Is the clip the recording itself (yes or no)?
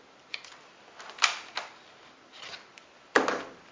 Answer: yes